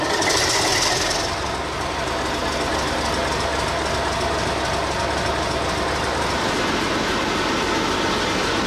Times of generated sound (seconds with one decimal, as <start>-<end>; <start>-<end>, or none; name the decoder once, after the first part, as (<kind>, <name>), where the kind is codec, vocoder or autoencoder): none